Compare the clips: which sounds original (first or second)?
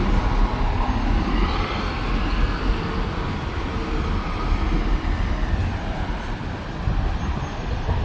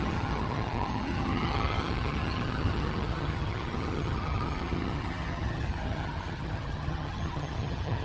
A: first